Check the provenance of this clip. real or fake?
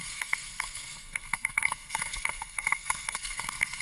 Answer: fake